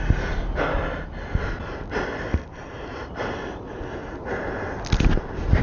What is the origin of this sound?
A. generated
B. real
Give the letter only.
B